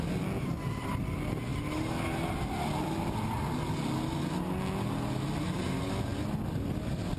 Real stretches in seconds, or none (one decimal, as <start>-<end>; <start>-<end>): 0.0-7.2

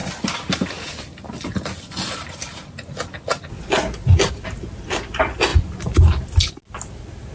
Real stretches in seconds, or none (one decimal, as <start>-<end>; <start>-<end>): 0.0-7.3

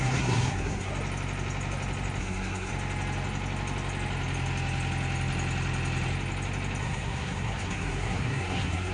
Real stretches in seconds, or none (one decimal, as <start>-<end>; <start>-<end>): 0.9-2.2; 2.7-6.8

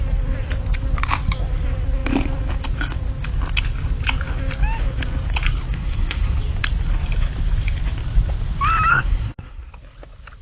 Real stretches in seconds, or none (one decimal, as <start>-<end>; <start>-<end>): 0.0-5.7; 6.4-8.9; 9.7-10.4

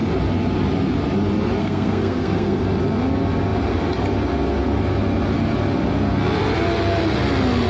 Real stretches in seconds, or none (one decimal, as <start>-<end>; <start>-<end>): 0.0-1.6; 2.6-7.7

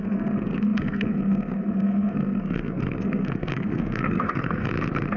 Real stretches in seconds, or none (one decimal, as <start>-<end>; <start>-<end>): 4.7-5.2